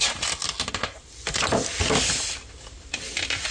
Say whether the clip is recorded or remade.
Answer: recorded